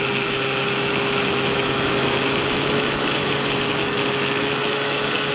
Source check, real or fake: fake